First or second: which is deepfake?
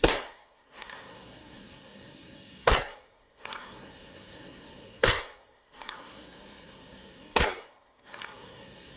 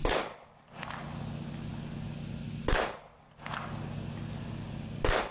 first